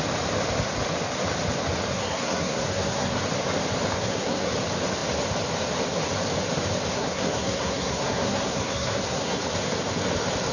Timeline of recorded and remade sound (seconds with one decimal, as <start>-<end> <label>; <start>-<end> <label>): 0.0-1.9 recorded; 1.9-3.2 remade; 3.2-4.0 recorded; 4.0-4.5 remade; 4.5-6.9 recorded; 6.9-9.4 remade; 9.4-10.5 recorded